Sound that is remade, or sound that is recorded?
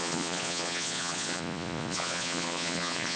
remade